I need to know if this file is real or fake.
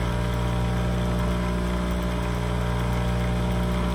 real